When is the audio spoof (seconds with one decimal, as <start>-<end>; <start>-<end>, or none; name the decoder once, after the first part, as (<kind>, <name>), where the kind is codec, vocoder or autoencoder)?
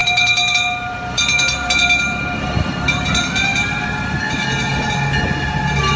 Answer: 0.0-3.1 (vocoder, BigVGAN v2); 3.5-4.2